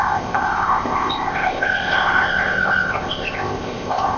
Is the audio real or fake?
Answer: fake